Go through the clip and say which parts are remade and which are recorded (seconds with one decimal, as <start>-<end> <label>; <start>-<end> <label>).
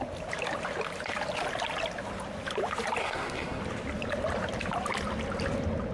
0.0-3.0 recorded; 3.0-3.6 remade; 3.6-5.9 recorded